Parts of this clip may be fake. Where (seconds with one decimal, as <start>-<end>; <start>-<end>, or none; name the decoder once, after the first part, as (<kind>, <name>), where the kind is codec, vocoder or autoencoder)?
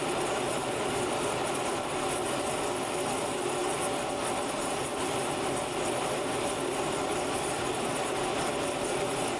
none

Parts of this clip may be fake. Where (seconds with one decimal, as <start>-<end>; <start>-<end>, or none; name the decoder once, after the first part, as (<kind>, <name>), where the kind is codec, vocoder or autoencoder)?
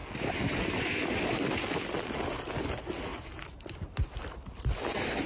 3.1-3.8 (vocoder, BigVGAN v2)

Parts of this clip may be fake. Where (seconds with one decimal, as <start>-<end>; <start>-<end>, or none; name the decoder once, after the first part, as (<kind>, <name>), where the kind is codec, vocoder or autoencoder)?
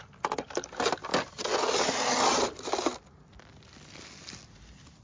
none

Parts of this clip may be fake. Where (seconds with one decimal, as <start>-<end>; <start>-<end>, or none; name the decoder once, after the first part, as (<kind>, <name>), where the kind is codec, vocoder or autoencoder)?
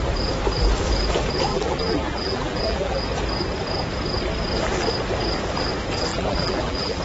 1.5-3.0 (vocoder, BigVGAN v2); 6.1-7.0